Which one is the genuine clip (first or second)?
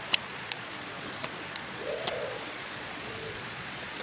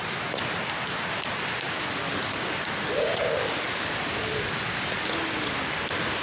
second